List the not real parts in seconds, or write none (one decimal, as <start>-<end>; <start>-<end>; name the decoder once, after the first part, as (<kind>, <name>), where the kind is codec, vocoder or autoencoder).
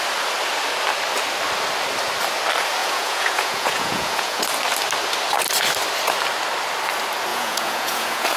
2.8-4.4 (vocoder, Vocos); 7.3-8.4